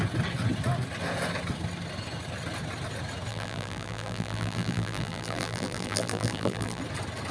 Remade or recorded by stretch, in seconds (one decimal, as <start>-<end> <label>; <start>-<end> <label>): 0.0-3.3 recorded; 3.3-6.8 remade; 6.8-7.3 recorded